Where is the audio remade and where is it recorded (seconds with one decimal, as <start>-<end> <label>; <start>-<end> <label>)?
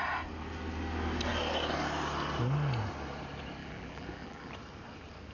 0.0-3.6 recorded; 3.6-4.5 remade; 4.5-5.3 recorded